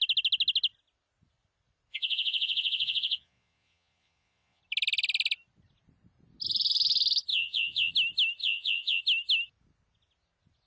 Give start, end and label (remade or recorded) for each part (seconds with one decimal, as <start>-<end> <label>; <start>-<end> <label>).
0.0-1.9 recorded; 1.9-4.6 remade; 4.6-7.3 recorded; 7.3-7.9 remade; 7.9-8.4 recorded; 8.4-9.0 remade; 9.0-10.7 recorded